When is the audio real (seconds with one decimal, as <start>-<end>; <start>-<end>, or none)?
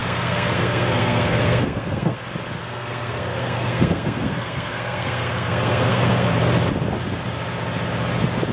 2.2-2.6; 6.3-8.5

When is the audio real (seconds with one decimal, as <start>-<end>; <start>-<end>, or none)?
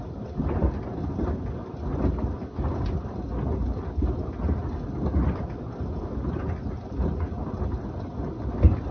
0.0-8.9